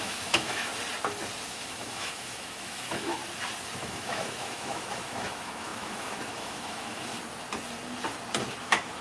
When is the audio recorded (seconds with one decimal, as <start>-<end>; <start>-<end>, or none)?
0.7-1.5; 3.2-3.8; 7.1-8.6